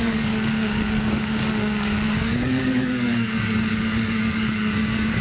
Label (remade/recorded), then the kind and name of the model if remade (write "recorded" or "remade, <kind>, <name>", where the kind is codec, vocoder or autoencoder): remade, codec, DAC